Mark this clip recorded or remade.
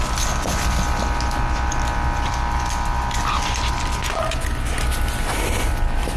recorded